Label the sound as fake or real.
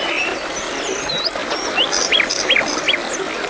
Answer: real